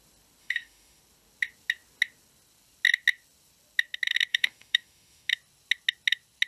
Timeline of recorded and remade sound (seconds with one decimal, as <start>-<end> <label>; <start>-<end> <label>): 0.0-0.4 recorded; 0.4-1.0 remade; 1.0-4.3 recorded; 4.3-5.3 remade; 5.3-6.5 recorded